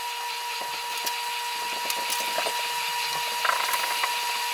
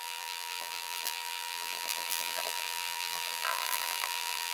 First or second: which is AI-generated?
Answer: second